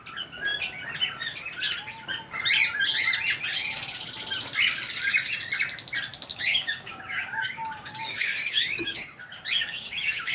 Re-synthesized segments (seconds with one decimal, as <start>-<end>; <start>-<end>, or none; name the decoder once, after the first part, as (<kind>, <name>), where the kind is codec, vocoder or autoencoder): 6.3-10.3 (codec, DAC)